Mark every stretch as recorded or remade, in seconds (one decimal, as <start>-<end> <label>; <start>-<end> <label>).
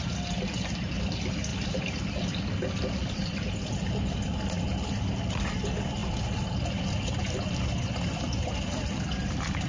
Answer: 0.0-1.5 recorded; 1.5-2.1 remade; 2.1-9.7 recorded